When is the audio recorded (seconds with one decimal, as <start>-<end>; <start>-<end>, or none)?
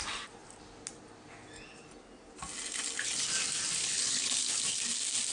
0.0-3.8; 4.6-5.3